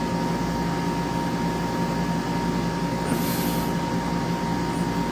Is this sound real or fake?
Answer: real